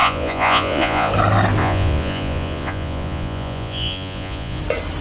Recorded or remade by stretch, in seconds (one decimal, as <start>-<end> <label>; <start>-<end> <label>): 0.0-1.1 remade; 1.1-1.6 recorded; 1.6-4.6 remade; 4.6-5.0 recorded

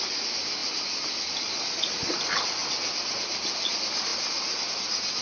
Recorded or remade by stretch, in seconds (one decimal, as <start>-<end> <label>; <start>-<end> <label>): 0.0-5.2 recorded

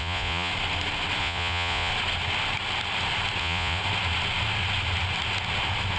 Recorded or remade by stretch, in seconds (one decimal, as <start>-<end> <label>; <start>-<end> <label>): 0.0-0.5 remade; 0.5-1.2 recorded; 1.2-1.9 remade; 1.9-3.4 recorded; 3.4-3.8 remade; 3.8-6.0 recorded

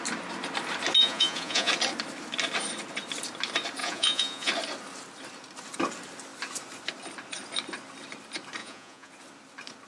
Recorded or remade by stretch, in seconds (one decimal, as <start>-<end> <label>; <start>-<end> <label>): 0.0-1.0 recorded; 1.0-1.7 remade; 1.7-3.8 recorded; 3.8-4.5 remade; 4.5-8.6 recorded; 8.6-9.1 remade; 9.1-9.9 recorded

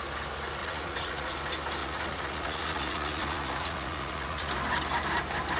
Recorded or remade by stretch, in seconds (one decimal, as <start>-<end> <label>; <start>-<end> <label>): 0.0-0.6 recorded; 0.6-1.3 remade; 1.3-1.8 recorded; 1.8-4.5 remade; 4.5-5.6 recorded

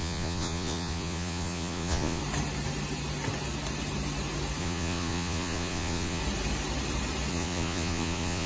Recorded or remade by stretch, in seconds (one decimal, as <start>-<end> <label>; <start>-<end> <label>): 0.0-2.2 remade; 2.2-4.6 recorded; 4.6-6.2 remade; 6.2-7.3 recorded; 7.3-8.5 remade

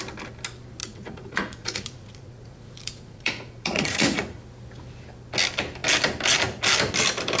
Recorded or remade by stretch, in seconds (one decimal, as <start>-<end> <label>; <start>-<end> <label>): 0.0-0.8 recorded; 0.8-4.4 remade; 4.4-7.4 recorded